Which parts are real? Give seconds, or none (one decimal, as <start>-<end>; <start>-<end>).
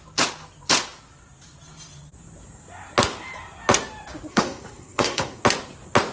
0.0-4.3; 5.4-6.1